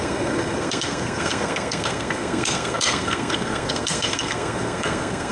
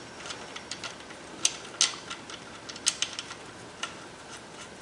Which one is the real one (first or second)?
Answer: second